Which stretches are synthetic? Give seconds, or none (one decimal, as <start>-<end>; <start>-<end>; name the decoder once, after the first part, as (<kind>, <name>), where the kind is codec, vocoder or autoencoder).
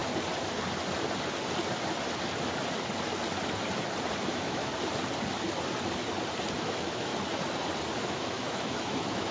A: 4.3-4.7 (autoencoder, DAC-VAE); 6.6-7.1; 8.0-9.3